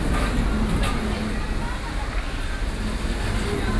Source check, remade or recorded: recorded